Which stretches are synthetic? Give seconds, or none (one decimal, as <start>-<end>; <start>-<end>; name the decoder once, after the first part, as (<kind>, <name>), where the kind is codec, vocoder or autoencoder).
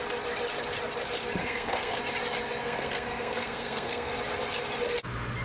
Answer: 1.4-2.0 (codec, SNAC); 2.6-4.1